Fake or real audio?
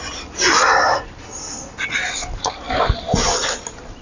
real